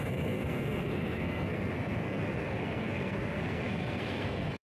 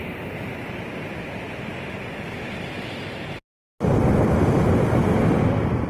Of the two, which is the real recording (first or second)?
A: second